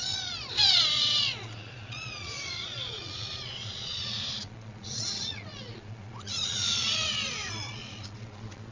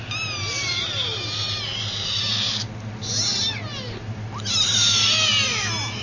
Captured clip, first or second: second